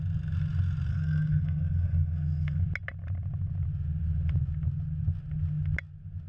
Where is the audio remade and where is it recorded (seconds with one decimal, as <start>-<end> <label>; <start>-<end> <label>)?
0.0-0.9 recorded; 0.9-2.6 remade; 2.6-6.3 recorded